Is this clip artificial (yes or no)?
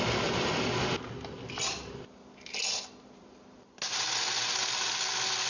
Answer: no